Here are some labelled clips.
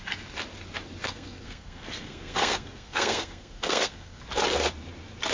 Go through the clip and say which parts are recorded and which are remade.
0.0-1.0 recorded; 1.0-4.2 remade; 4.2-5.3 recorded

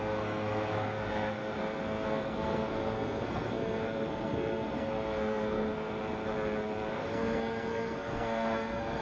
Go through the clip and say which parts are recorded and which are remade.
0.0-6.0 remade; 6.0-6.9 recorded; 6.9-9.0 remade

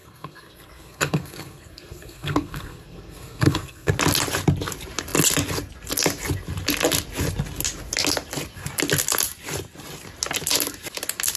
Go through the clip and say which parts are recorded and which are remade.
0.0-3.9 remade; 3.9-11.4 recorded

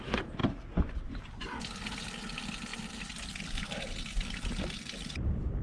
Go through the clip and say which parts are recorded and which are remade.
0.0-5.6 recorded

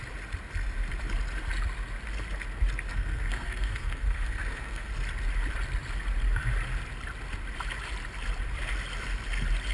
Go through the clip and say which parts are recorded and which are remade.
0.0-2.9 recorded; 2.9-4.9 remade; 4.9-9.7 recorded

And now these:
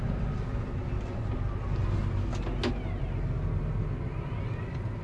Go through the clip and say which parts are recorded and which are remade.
0.0-5.0 recorded

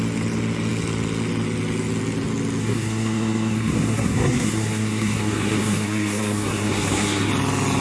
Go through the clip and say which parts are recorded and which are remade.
0.0-2.6 recorded; 2.6-7.3 remade; 7.3-7.8 recorded